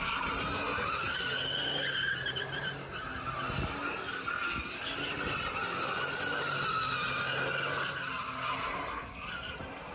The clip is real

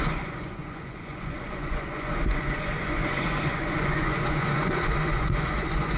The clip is fake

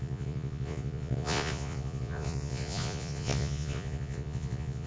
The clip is fake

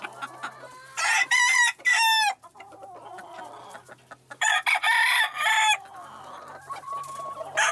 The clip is real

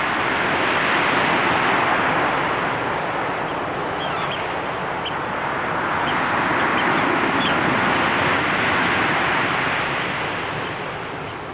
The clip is real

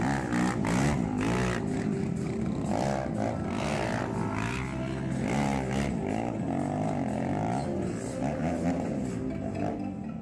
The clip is real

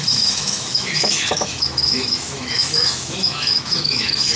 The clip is fake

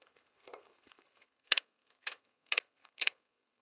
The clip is fake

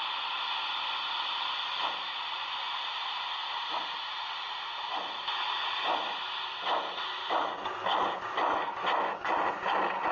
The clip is real